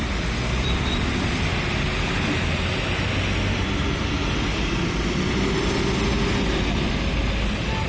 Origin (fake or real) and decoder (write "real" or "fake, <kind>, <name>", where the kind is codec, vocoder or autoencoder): real